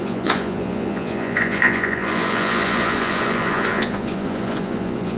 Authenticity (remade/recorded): remade